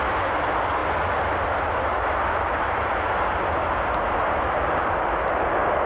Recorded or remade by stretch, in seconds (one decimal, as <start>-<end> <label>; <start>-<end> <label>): 0.0-5.9 recorded

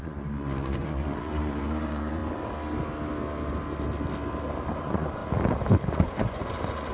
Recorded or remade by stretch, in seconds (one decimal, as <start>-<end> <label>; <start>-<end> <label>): 0.0-2.2 remade; 2.2-4.8 recorded; 4.8-5.2 remade; 5.2-5.9 recorded; 5.9-6.9 remade